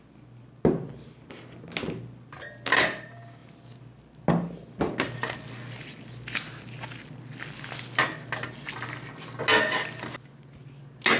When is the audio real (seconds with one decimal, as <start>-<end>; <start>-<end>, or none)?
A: 0.0-11.2